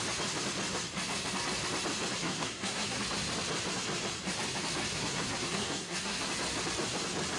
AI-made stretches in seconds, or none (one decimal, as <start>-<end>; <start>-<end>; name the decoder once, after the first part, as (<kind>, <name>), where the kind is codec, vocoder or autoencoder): 2.2-3.0 (codec, SNAC); 4.9-6.3